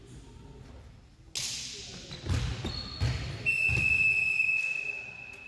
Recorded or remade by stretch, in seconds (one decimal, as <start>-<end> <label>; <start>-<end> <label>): 0.0-5.5 recorded